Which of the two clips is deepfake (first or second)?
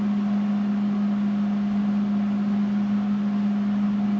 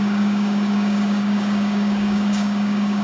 second